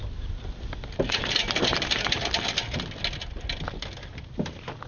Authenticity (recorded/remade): recorded